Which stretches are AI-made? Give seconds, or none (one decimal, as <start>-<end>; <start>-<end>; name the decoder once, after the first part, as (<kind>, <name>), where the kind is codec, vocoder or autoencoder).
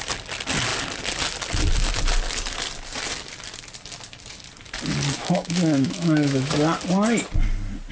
5.2-6.5 (autoencoder, DAC-VAE)